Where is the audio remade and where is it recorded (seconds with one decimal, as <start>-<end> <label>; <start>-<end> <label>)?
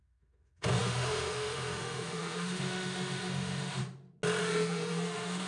0.0-3.8 remade; 3.8-4.4 recorded; 4.4-5.5 remade